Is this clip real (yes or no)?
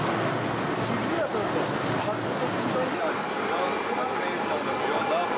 yes